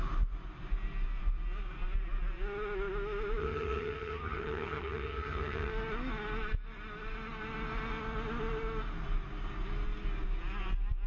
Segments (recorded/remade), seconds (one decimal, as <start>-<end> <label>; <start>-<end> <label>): 0.0-3.4 recorded; 3.4-5.7 remade; 5.7-11.1 recorded